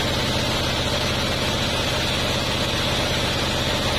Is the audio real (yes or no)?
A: yes